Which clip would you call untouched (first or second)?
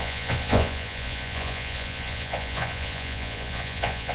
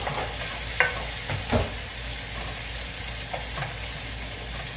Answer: second